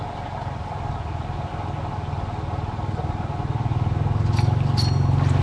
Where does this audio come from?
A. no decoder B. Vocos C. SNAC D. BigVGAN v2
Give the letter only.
A